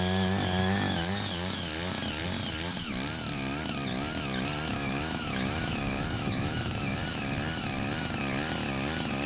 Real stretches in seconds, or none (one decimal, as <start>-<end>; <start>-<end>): 0.0-0.6; 1.1-4.7; 7.0-9.3

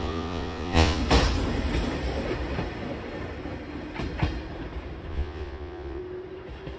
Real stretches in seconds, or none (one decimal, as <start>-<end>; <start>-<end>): 1.0-5.1; 6.0-6.8